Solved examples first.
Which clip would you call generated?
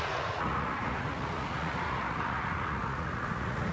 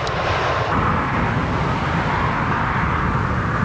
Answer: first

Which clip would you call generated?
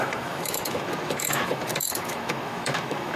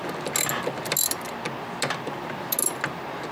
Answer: first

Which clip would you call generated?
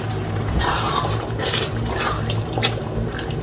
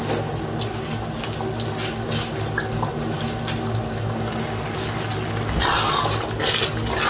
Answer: first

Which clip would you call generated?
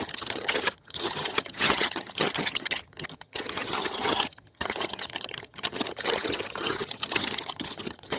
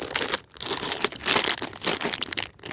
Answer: first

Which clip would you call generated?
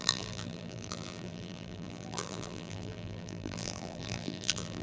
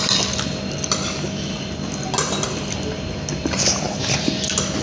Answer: first